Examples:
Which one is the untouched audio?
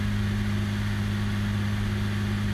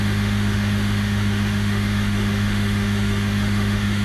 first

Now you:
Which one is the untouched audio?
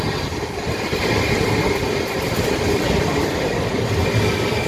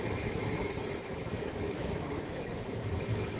first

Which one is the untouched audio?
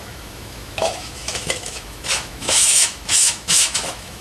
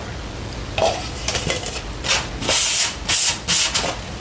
second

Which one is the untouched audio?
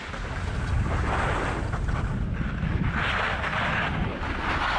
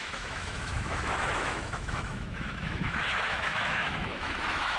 first